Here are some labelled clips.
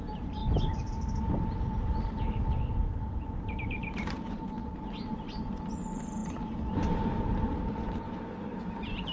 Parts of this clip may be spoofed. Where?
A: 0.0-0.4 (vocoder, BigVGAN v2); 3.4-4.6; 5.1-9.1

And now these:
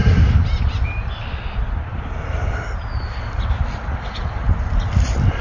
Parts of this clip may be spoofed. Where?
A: none

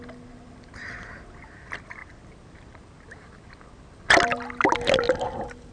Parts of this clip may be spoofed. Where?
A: none

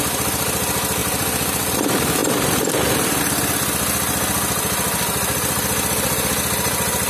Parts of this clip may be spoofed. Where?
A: 1.0-1.7 (vocoder, BigVGAN v2); 2.2-3.2

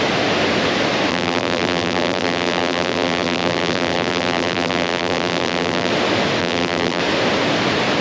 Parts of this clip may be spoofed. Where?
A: 1.1-5.9 (vocoder, BigVGAN v2); 6.4-7.0

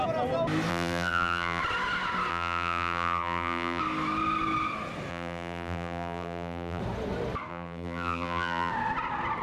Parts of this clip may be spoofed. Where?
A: 0.7-1.6 (vocoder, BigVGAN v2); 2.3-3.8; 5.1-6.8; 7.5-8.7

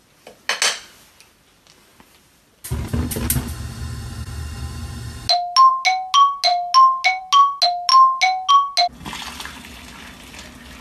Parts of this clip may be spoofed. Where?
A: none

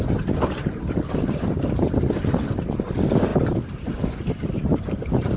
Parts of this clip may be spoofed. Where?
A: none